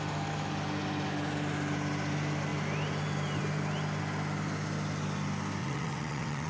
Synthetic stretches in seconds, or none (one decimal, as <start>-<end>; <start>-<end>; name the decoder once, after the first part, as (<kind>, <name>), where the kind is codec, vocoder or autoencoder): 5.6-6.5 (vocoder, WaveNeXt)